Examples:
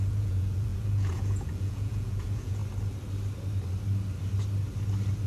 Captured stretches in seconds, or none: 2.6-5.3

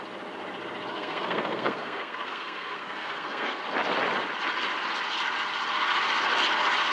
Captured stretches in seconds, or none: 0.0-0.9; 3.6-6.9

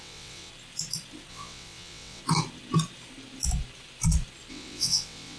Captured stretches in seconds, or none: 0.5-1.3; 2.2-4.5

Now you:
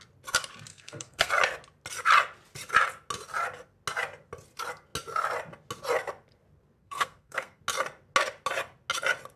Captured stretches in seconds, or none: 0.0-0.7; 1.3-6.8; 7.6-9.4